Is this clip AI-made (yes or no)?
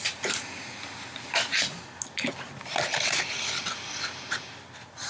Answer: no